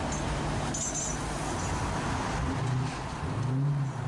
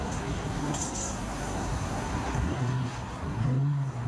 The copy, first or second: second